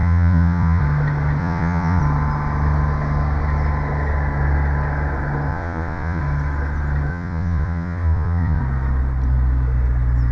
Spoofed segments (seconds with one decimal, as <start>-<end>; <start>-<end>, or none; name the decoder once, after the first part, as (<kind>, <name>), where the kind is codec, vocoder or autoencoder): 0.0-0.8 (vocoder, Vocos); 1.4-2.0; 5.5-6.2; 7.1-8.6